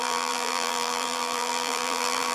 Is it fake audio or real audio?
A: fake